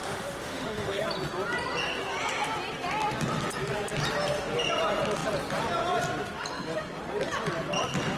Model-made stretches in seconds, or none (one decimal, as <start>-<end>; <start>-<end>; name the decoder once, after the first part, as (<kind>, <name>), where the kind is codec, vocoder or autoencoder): 0.0-1.0 (autoencoder, DAC-VAE)